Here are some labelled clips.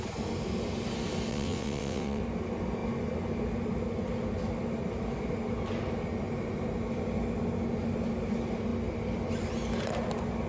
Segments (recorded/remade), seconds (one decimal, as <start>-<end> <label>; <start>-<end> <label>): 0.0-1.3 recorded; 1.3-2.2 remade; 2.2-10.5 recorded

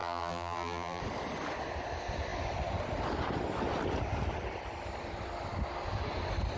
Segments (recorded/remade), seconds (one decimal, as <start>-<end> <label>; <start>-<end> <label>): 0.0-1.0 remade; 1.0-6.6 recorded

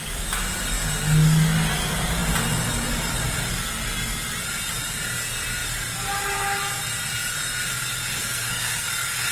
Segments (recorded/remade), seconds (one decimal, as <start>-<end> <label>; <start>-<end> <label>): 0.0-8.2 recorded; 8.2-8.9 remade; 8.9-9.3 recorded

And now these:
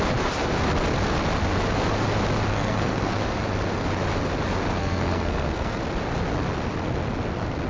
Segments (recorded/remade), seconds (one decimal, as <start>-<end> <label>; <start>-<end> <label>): 0.0-2.5 recorded; 2.5-3.2 remade; 3.2-4.8 recorded; 4.8-5.8 remade; 5.8-7.7 recorded

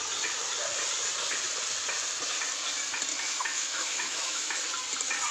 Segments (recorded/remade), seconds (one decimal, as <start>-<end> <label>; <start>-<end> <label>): 0.0-3.1 recorded; 3.1-4.6 remade; 4.6-5.3 recorded

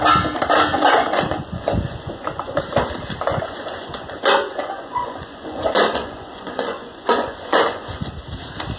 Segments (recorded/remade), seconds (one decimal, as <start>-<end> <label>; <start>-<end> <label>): 0.0-0.7 recorded; 0.7-2.6 remade; 2.6-3.3 recorded; 3.3-8.1 remade; 8.1-8.8 recorded

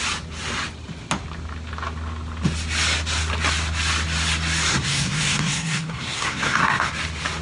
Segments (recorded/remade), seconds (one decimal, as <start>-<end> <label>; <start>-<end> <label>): 0.0-4.7 recorded; 4.7-6.9 remade; 6.9-7.4 recorded

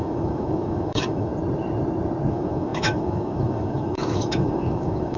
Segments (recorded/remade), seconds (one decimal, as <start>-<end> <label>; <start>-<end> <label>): 0.0-1.3 remade; 1.3-2.3 recorded; 2.3-5.2 remade